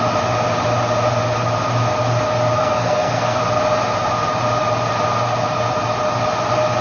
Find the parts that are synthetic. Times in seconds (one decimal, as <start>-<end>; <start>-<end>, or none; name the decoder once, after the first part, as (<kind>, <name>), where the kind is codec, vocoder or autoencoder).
2.6-3.4 (codec, SNAC)

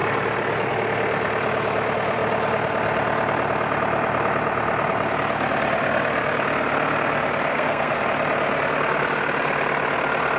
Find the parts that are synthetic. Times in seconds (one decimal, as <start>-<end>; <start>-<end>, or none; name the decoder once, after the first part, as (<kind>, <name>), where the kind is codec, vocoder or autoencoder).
7.5-8.0 (codec, SNAC)

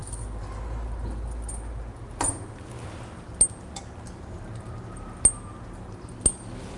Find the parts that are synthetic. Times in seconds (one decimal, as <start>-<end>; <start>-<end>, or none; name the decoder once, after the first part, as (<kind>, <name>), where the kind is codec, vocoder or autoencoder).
none

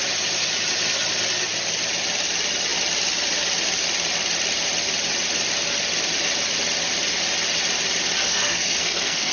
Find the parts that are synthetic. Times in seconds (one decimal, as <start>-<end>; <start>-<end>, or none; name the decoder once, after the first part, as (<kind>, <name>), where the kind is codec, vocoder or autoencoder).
8.2-9.3 (codec, SNAC)